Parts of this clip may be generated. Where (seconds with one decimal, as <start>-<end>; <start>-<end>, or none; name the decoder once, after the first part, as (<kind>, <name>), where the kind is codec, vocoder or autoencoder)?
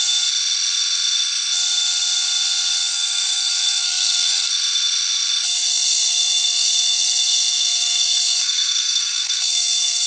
2.9-4.5 (codec, SNAC); 5.6-10.1